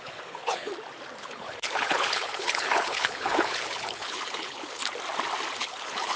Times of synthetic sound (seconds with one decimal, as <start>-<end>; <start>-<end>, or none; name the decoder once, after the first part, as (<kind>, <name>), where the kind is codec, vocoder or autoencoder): 0.0-0.7 (codec, HILCodec); 1.2-4.8; 5.6-6.2